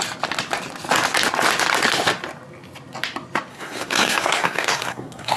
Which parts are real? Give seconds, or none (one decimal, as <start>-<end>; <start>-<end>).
0.0-3.5